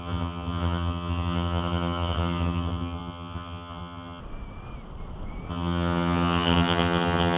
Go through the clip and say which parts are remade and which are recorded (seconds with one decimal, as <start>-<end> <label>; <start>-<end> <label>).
0.0-4.2 remade; 4.2-5.5 recorded; 5.5-7.4 remade